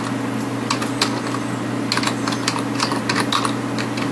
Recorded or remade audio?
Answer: recorded